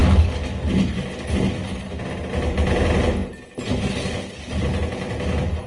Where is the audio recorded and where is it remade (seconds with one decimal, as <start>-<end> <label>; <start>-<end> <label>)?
0.0-5.7 recorded